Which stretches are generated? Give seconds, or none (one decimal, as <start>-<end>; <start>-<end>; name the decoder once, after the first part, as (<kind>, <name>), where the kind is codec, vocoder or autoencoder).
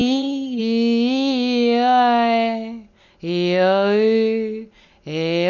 0.0-0.6 (vocoder, HiFi-GAN)